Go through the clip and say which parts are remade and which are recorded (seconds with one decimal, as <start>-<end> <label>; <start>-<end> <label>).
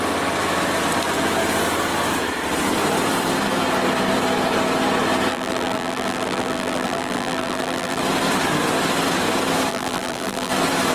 0.0-5.3 recorded; 5.3-8.0 remade; 8.0-9.7 recorded; 9.7-10.5 remade; 10.5-10.9 recorded